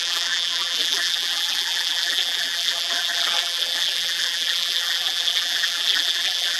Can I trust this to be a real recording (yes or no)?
no